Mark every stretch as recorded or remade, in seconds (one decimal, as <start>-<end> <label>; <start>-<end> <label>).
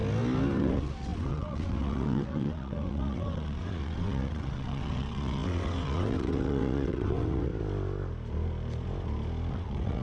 0.0-0.6 recorded; 0.6-7.5 remade; 7.5-9.5 recorded; 9.5-10.0 remade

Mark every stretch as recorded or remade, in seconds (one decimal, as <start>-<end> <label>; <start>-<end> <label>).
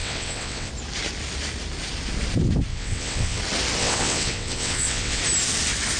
0.0-0.7 remade; 0.7-2.7 recorded; 2.7-3.4 remade; 3.4-3.8 recorded; 3.8-5.2 remade; 5.2-6.0 recorded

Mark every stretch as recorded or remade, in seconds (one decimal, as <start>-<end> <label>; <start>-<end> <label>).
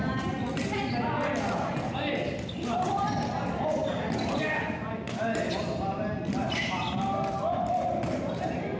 0.0-8.8 recorded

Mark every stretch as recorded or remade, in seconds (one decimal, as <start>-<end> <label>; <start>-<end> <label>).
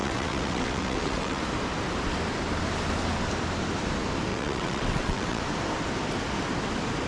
0.0-1.4 remade; 1.4-4.3 recorded; 4.3-5.4 remade; 5.4-7.1 recorded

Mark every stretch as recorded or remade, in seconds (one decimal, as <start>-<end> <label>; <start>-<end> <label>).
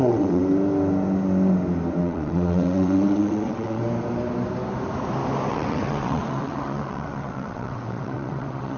0.0-0.4 remade; 0.4-2.0 recorded; 2.0-3.8 remade; 3.8-5.5 recorded; 5.5-8.8 remade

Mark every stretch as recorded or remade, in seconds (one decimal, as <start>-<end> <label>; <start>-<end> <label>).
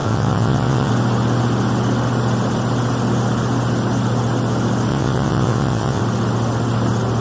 0.0-0.9 remade; 0.9-4.9 recorded; 4.9-6.0 remade; 6.0-7.2 recorded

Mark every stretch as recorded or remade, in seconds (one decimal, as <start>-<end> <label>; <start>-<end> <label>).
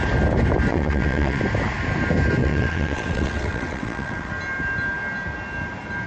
0.0-0.7 recorded; 0.7-1.4 remade; 1.4-2.4 recorded; 2.4-4.3 remade; 4.3-6.1 recorded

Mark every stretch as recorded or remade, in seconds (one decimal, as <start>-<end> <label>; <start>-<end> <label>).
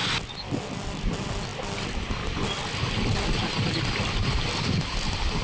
0.0-5.4 recorded